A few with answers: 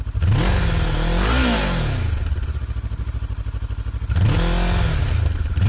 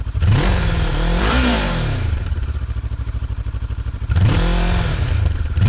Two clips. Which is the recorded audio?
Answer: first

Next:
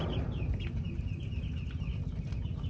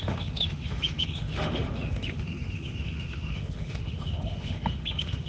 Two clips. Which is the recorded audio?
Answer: first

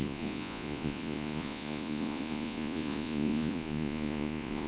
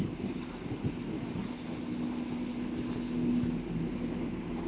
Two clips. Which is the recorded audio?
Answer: second